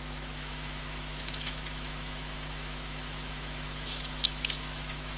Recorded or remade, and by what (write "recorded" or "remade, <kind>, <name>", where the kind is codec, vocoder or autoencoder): remade, autoencoder, DAC-VAE